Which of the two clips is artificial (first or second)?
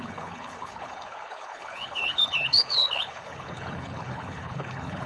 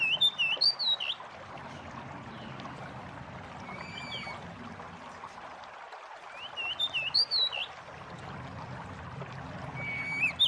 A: first